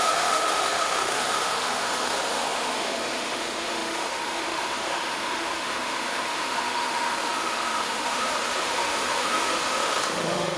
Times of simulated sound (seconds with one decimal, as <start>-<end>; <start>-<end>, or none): 0.0-10.6

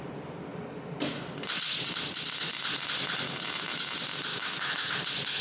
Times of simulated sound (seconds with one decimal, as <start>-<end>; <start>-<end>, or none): 4.3-4.9

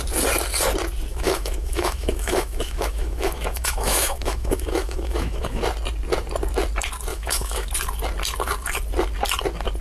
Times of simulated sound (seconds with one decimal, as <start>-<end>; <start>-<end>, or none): 1.1-5.6; 7.1-7.7

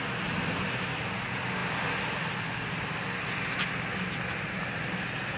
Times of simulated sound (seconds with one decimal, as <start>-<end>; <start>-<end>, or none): none

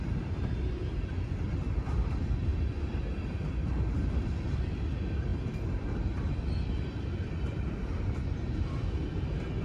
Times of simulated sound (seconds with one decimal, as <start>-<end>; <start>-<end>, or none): none